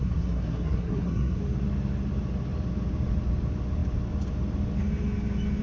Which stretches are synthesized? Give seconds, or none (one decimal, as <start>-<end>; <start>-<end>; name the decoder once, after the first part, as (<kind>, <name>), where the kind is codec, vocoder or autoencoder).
0.0-1.4 (codec, SNAC)